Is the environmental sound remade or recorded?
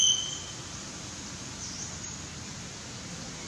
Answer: recorded